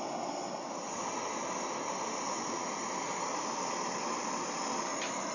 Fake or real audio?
real